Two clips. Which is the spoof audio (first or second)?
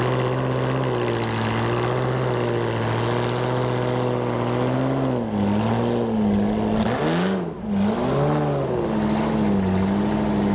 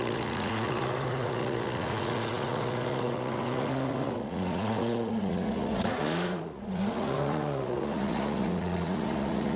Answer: second